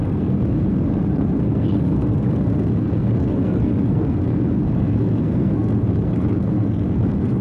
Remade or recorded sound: remade